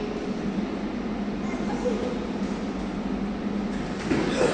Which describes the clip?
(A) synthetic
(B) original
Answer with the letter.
B